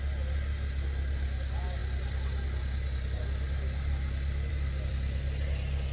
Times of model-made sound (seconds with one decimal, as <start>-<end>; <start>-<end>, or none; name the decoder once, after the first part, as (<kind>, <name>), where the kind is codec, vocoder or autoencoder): none